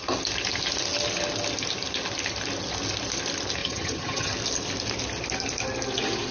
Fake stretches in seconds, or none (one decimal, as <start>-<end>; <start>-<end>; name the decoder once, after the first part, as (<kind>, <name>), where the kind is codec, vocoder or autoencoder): 3.6-4.3 (vocoder, HiFi-GAN)